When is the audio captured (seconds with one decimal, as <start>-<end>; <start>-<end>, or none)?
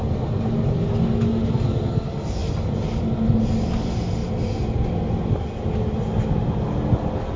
0.0-7.4